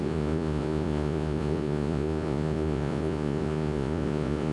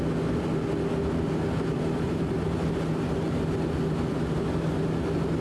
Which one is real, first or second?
second